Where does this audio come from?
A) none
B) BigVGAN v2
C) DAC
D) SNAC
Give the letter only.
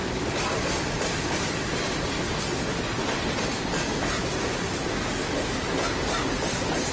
A